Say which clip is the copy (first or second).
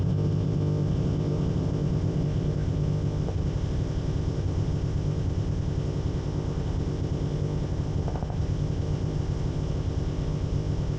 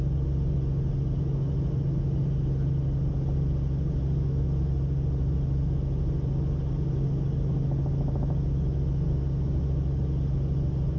first